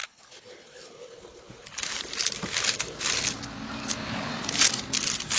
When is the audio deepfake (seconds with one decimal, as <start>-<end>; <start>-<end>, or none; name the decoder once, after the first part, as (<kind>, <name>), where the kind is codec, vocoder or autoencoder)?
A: 0.0-1.9 (codec, HILCodec); 3.8-4.3